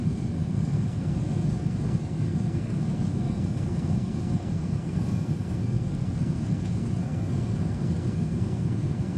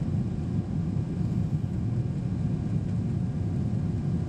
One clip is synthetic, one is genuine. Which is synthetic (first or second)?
first